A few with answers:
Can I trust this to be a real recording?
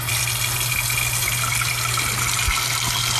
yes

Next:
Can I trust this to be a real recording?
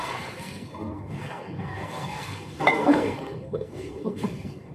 no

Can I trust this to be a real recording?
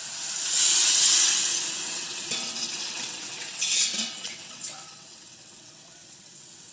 no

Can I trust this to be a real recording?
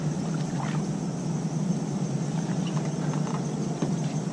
yes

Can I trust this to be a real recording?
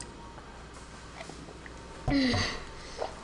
yes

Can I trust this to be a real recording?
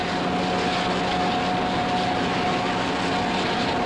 yes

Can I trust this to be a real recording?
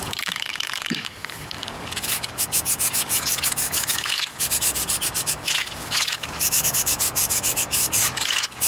no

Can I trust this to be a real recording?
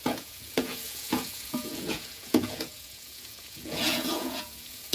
no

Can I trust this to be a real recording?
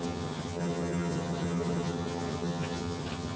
no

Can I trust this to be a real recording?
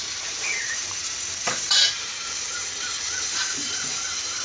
no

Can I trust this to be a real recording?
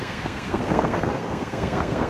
no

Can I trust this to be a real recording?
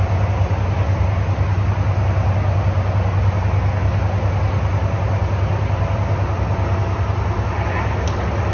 yes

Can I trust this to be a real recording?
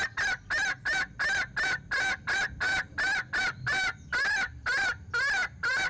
yes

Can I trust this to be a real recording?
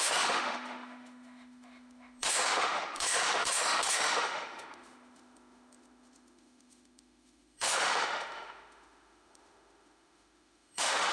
no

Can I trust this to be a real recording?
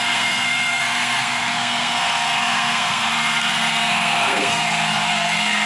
no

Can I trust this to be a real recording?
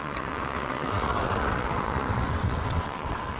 no